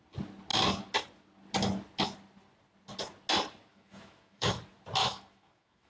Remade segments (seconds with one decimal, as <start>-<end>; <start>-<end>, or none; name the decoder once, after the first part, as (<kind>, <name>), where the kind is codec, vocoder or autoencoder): 3.7-4.6 (autoencoder, DAC-VAE); 5.0-5.9

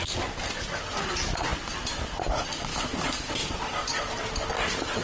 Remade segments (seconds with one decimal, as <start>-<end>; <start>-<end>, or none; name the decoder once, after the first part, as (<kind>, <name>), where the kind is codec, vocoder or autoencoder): 2.7-3.3 (autoencoder, DAC-VAE)

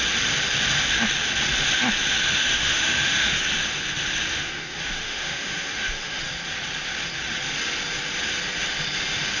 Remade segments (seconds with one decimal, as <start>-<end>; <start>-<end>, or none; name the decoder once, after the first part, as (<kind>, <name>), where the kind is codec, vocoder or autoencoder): 2.2-3.4 (autoencoder, DAC-VAE); 4.3-6.2

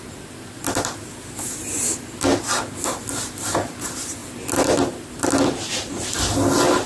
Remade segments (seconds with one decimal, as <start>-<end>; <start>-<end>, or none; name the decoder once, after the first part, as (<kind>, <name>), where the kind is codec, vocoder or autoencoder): none

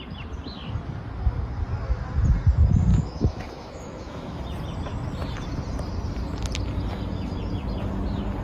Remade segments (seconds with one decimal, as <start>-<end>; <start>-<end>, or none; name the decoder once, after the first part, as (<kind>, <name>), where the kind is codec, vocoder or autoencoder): 2.9-4.4 (autoencoder, DAC-VAE)

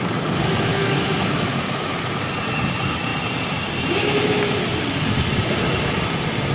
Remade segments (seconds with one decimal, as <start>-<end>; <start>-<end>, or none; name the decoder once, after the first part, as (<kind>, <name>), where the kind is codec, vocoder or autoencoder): 0.7-2.1 (autoencoder, DAC-VAE)

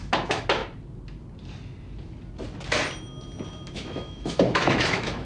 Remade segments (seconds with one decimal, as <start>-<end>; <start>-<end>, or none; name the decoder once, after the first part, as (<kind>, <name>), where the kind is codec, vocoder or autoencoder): 0.0-0.6 (autoencoder, DAC-VAE); 3.7-5.2

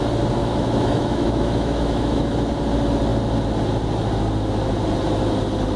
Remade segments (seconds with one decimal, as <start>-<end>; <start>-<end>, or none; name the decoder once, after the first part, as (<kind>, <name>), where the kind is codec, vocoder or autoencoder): 0.4-2.5 (autoencoder, DAC-VAE)